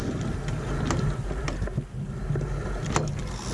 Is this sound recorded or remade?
recorded